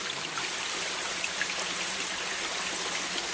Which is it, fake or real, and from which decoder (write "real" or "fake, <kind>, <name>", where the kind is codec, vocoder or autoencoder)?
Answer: real